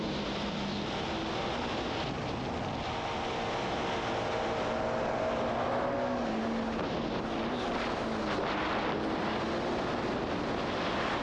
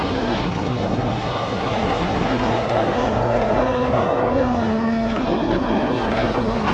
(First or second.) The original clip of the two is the first